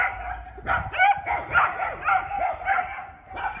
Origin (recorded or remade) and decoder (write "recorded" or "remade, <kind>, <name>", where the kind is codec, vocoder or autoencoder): recorded